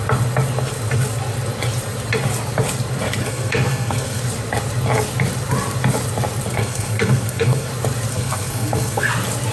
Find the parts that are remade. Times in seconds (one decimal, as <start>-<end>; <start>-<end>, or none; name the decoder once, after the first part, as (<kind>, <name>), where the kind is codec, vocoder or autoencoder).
3.2-4.2 (codec, SNAC); 6.5-7.7; 8.1-9.1